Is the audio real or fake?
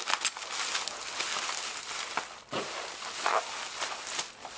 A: real